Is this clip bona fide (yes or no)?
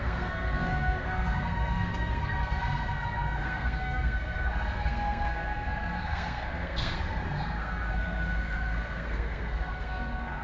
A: no